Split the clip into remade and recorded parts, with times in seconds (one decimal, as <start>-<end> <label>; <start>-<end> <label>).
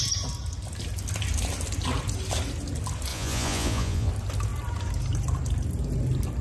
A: 0.0-3.1 recorded; 3.1-4.1 remade; 4.1-6.4 recorded